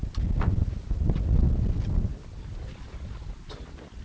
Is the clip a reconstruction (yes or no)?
no